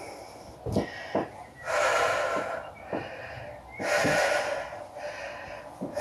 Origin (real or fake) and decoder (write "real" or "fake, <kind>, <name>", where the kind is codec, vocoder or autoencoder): real